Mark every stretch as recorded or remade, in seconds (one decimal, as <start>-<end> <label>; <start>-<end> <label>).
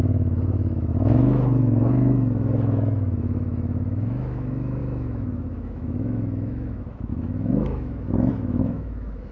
0.0-9.3 remade